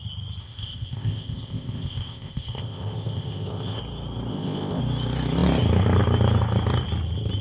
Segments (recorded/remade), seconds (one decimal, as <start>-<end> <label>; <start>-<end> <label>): 0.0-0.4 recorded; 0.4-3.8 remade; 3.8-4.3 recorded; 4.3-4.8 remade; 4.8-7.4 recorded